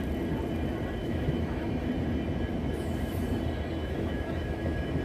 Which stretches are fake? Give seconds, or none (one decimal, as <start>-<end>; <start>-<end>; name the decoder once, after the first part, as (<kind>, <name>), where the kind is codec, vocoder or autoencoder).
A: 1.0-1.9 (autoencoder, DAC-VAE); 2.6-3.2; 3.8-5.0